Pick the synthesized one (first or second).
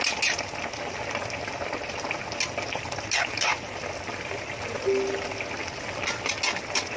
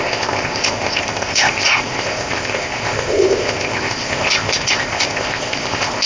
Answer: second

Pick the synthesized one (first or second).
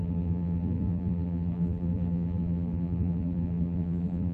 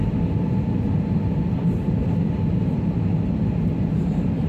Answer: first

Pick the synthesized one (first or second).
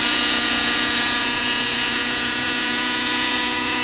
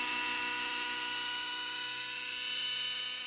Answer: first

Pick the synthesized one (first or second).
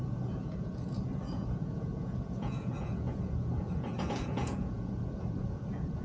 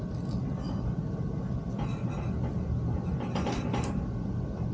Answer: first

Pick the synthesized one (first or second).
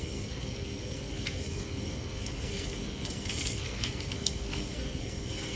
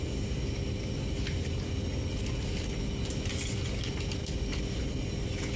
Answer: first